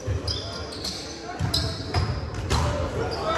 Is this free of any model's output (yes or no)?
yes